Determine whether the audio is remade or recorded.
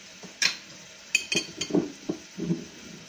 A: recorded